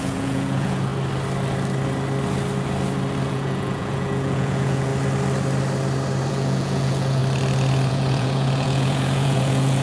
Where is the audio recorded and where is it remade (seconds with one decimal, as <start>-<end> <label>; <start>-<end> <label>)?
0.0-0.9 remade; 0.9-3.3 recorded; 3.3-4.9 remade; 4.9-6.3 recorded; 6.3-7.2 remade; 7.2-7.9 recorded; 7.9-9.8 remade